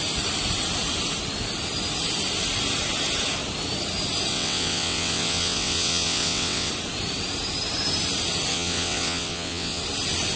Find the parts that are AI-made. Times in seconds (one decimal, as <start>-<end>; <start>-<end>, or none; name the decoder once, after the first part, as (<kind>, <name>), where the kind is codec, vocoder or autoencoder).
4.3-6.7 (vocoder, WaveNeXt); 8.5-9.8